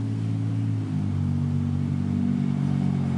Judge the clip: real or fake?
real